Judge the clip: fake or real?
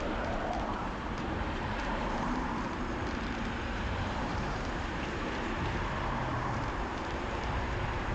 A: fake